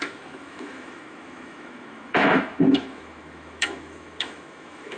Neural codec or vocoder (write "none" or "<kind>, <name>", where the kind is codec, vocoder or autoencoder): autoencoder, DAC-VAE